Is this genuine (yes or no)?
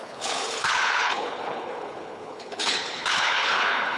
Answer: no